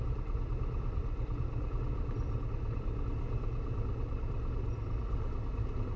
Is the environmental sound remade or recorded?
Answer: recorded